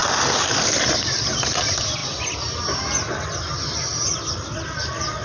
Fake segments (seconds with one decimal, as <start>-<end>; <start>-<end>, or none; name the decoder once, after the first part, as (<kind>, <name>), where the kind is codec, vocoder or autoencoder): 0.0-1.6 (vocoder, BigVGAN v2); 3.9-4.5